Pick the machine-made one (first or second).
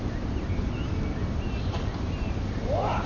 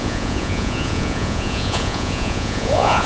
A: second